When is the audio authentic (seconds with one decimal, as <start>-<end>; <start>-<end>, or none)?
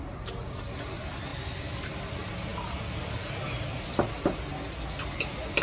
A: 0.0-5.6